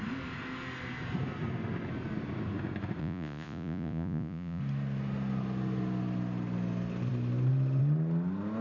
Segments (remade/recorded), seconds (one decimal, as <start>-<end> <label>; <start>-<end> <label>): 0.0-3.0 recorded; 3.0-4.6 remade; 4.6-8.6 recorded

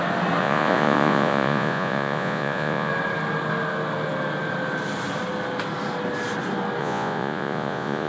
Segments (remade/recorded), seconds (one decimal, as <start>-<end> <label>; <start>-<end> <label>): 0.0-0.4 recorded; 0.4-2.9 remade; 2.9-6.8 recorded; 6.8-8.1 remade

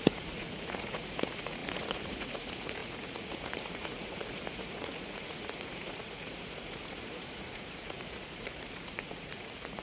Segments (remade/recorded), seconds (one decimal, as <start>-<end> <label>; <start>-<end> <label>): 0.0-9.8 remade